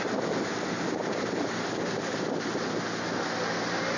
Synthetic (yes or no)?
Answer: no